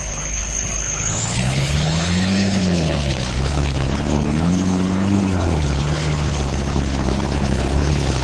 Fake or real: fake